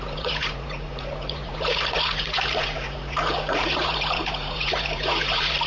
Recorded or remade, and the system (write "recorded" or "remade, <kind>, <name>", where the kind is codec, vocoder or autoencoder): remade, vocoder, Vocos